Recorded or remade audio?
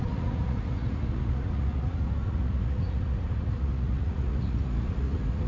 remade